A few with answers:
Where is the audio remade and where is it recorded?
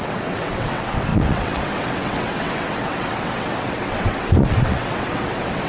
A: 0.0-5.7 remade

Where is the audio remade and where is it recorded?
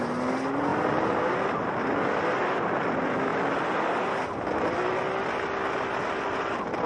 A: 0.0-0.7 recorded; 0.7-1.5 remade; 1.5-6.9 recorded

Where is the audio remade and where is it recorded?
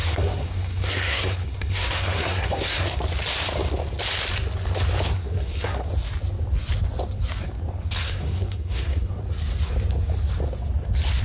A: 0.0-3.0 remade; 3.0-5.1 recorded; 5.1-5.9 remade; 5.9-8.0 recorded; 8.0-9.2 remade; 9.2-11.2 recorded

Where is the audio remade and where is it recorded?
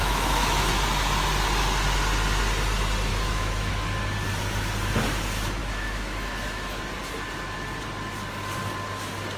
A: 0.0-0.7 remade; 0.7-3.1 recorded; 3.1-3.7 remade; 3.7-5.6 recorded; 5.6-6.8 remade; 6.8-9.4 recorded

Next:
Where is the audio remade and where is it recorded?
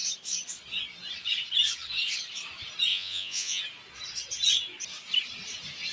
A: 0.0-2.9 recorded; 2.9-3.6 remade; 3.6-5.9 recorded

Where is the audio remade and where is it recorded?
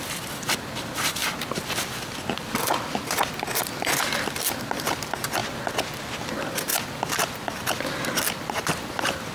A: 0.0-5.4 remade; 5.4-6.3 recorded; 6.3-9.3 remade